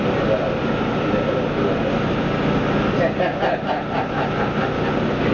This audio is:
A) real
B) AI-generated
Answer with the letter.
A